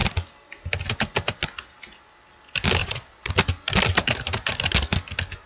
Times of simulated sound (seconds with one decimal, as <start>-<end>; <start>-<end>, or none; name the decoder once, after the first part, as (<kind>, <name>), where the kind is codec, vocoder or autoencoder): 2.8-3.3 (vocoder, Vocos)